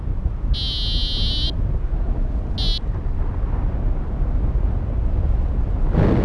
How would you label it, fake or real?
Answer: real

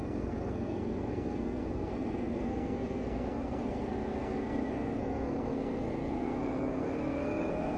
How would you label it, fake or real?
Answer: fake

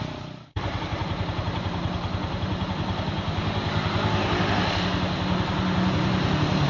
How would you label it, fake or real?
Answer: real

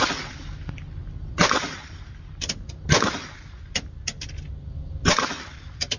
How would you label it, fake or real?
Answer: real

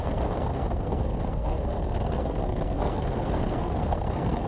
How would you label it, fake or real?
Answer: fake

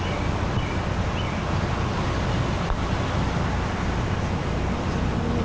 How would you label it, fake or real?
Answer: real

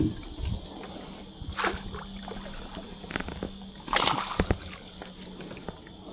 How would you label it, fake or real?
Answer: real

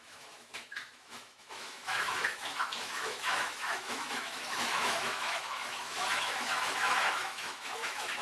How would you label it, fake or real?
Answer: fake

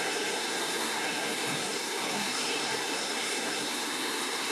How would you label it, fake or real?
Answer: fake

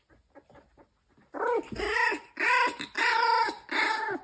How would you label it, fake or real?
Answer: real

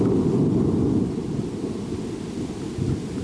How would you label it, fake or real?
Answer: real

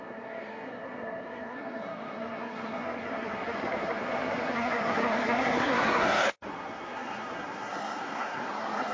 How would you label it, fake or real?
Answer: fake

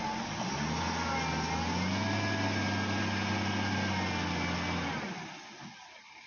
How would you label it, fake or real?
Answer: real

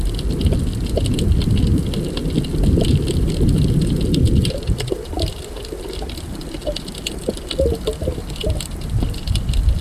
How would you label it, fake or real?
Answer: real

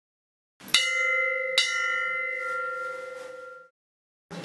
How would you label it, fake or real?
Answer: real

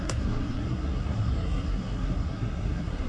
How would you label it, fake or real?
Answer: fake